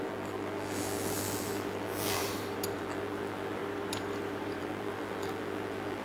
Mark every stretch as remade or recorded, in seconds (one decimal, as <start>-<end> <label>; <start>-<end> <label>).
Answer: 0.0-2.2 remade; 2.2-2.8 recorded; 2.8-3.6 remade; 3.6-4.6 recorded; 4.6-6.0 remade